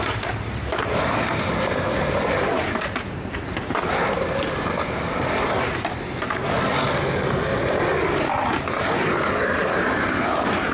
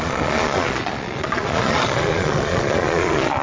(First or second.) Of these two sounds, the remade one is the second